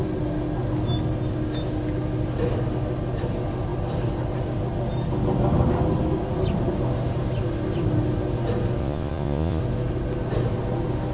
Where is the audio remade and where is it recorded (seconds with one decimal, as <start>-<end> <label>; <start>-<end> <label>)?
0.0-8.8 recorded; 8.8-9.6 remade; 9.6-11.1 recorded